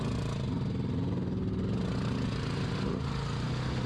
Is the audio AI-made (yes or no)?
no